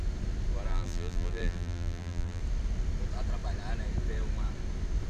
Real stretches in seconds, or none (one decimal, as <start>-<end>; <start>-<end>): 0.0-0.7; 2.4-5.1